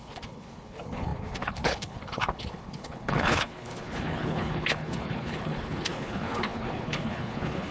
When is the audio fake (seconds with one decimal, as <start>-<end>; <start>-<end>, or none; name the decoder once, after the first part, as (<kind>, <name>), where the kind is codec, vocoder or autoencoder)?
0.0-7.7 (codec, HILCodec)